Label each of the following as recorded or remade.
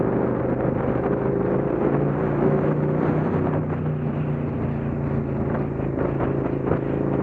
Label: recorded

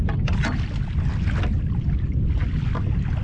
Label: recorded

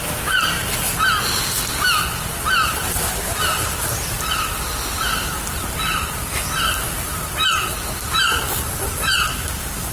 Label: recorded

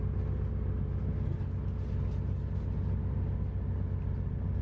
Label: recorded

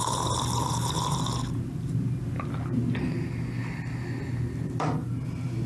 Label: recorded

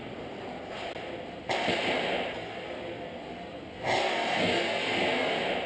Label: recorded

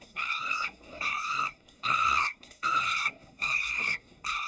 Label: remade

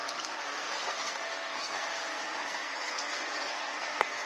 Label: remade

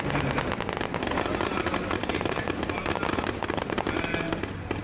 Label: recorded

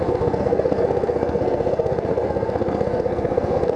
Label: remade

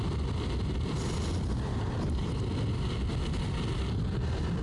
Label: recorded